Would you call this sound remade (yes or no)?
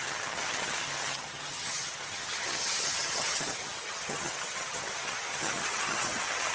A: yes